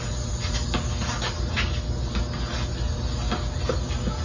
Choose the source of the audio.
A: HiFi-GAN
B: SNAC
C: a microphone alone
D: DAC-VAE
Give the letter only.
C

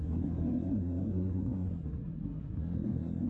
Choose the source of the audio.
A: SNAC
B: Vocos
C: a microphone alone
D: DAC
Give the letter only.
A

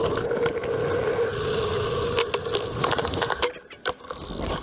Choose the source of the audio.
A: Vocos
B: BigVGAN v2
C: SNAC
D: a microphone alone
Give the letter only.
D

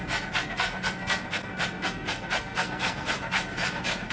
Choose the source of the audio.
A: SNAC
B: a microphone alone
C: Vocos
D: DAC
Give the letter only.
A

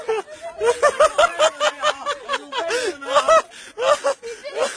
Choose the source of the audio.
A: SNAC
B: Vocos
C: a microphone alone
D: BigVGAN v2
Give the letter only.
C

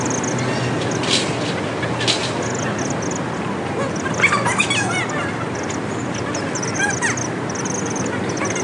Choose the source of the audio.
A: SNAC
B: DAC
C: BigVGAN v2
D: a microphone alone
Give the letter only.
D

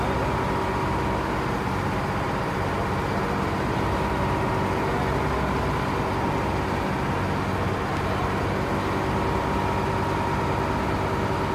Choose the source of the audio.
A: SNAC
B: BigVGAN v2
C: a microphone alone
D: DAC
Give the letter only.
C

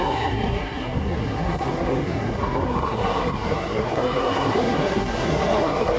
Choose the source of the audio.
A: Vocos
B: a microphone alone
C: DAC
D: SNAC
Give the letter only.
D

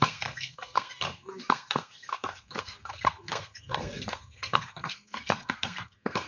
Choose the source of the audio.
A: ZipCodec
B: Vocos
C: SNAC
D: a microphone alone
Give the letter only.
C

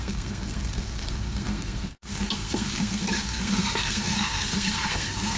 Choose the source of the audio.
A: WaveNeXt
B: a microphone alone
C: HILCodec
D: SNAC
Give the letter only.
D